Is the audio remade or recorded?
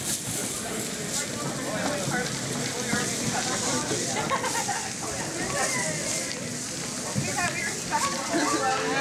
recorded